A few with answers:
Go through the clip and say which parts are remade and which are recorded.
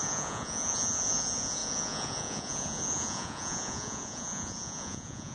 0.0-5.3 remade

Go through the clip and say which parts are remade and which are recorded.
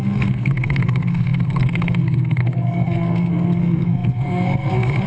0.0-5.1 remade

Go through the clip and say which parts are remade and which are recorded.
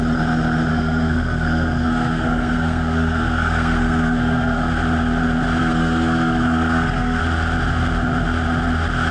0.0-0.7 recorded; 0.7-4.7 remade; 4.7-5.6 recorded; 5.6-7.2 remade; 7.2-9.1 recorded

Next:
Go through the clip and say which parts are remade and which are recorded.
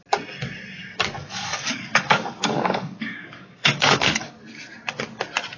0.0-1.2 recorded; 1.2-4.3 remade; 4.3-5.6 recorded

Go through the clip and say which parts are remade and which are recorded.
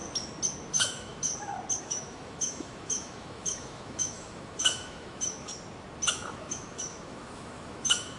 0.0-0.7 recorded; 0.7-1.3 remade; 1.3-1.8 recorded; 1.8-5.5 remade; 5.5-6.1 recorded; 6.1-8.2 remade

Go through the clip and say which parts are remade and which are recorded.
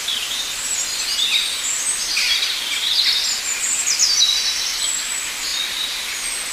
0.0-6.5 recorded